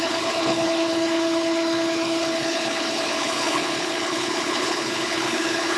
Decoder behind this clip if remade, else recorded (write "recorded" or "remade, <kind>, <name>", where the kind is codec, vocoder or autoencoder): remade, codec, HILCodec